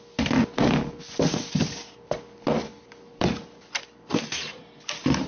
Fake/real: real